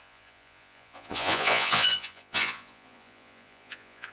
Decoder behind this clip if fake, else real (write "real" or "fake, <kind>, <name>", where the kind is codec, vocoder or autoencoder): fake, vocoder, Vocos